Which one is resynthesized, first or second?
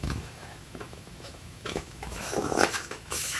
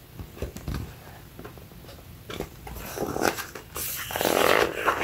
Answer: first